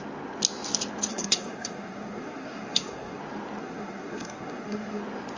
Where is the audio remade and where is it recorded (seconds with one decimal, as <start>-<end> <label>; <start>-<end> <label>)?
0.0-1.1 recorded; 1.1-3.2 remade; 3.2-3.6 recorded; 3.6-5.0 remade; 5.0-5.4 recorded